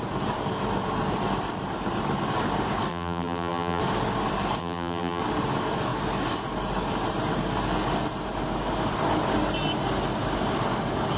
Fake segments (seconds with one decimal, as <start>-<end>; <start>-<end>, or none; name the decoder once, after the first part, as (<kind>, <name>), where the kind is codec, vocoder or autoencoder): 2.9-3.8 (vocoder, BigVGAN v2); 4.6-5.2